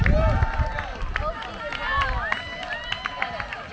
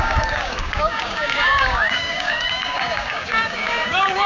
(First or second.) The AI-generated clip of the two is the second